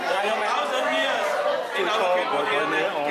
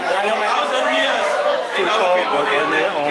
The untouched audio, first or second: first